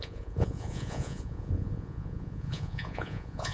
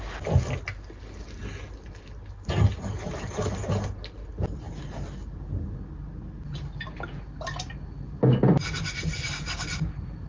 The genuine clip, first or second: second